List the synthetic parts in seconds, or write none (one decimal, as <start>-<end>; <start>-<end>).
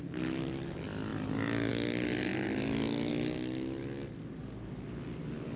none